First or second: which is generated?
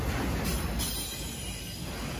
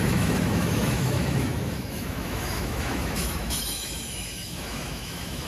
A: second